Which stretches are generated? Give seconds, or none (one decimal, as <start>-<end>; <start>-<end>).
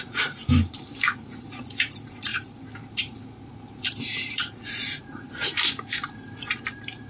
0.0-7.1